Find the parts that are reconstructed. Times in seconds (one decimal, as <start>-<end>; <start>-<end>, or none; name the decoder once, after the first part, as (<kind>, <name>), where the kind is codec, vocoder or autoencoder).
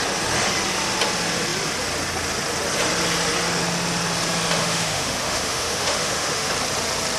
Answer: 4.6-6.5 (autoencoder, DAC-VAE)